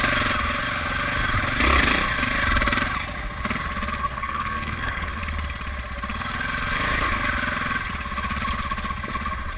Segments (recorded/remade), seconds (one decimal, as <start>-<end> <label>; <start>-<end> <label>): 0.0-4.1 recorded; 4.1-5.2 remade; 5.2-9.6 recorded